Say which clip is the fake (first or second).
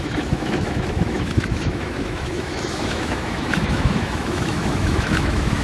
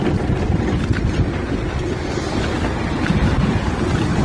first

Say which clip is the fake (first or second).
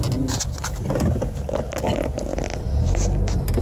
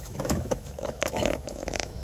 second